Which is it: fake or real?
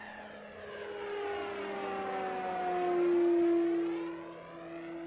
real